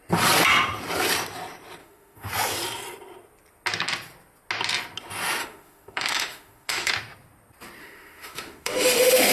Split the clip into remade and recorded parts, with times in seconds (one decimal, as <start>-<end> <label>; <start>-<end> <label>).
0.0-1.8 recorded; 1.8-2.3 remade; 2.3-5.4 recorded; 5.4-6.9 remade; 6.9-7.8 recorded; 7.8-9.3 remade